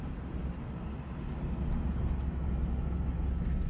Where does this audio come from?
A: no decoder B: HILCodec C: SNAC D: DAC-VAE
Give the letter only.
A